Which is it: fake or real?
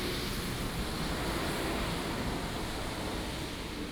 real